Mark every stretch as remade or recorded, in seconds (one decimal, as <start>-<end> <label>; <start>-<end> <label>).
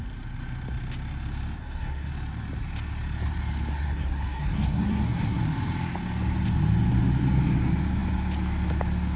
0.0-1.6 recorded; 1.6-2.1 remade; 2.1-3.7 recorded; 3.7-5.4 remade; 5.4-9.2 recorded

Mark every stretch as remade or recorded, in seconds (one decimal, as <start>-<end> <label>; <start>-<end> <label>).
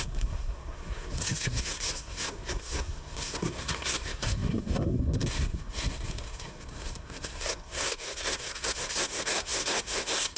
0.0-10.4 remade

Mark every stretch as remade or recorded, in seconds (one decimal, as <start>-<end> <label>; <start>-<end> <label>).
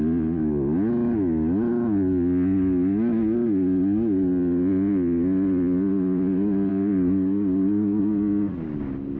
0.0-6.7 recorded; 6.7-8.0 remade; 8.0-9.2 recorded